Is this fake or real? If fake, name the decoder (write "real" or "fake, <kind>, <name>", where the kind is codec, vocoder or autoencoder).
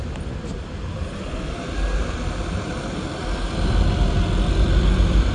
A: real